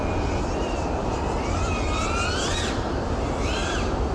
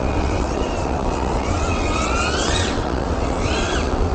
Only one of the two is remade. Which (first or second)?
second